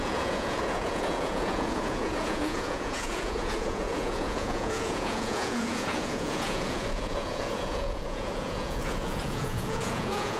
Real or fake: fake